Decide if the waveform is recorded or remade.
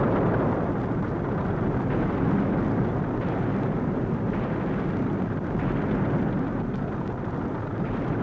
recorded